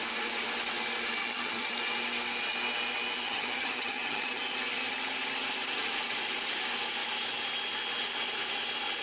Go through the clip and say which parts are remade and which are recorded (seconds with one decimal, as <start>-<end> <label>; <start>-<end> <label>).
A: 0.0-1.2 recorded; 1.2-1.7 remade; 1.7-3.2 recorded; 3.2-4.4 remade; 4.4-9.0 recorded